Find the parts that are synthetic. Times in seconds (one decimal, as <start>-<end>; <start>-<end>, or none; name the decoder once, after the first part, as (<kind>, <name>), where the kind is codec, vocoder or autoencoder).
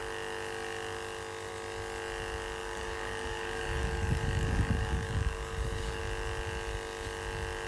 2.6-6.0 (codec, DAC)